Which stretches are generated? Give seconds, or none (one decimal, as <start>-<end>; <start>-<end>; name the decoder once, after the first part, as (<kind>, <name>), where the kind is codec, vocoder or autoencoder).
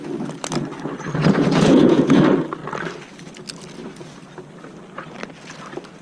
1.2-2.2 (vocoder, Vocos)